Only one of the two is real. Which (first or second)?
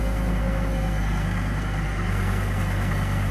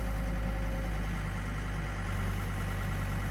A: second